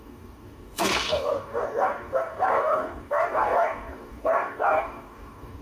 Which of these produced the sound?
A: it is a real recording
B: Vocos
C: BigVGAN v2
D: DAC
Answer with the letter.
D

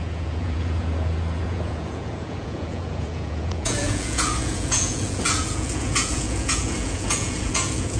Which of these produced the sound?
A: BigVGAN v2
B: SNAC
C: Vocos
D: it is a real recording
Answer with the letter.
C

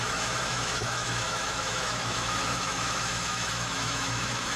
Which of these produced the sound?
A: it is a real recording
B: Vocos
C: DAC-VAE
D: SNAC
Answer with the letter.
C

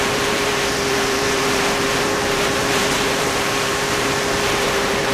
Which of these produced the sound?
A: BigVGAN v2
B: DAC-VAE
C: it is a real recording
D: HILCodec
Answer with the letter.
A